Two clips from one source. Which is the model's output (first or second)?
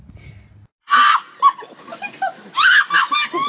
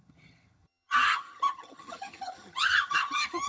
second